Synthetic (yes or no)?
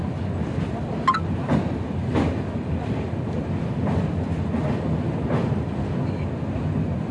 no